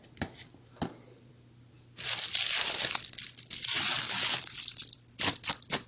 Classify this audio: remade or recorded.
remade